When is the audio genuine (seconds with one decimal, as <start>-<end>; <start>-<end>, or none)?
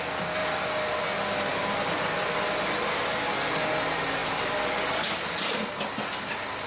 0.0-6.7